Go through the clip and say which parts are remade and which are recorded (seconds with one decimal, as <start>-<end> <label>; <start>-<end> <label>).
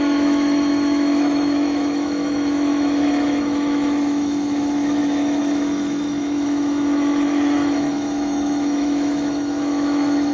0.0-10.3 remade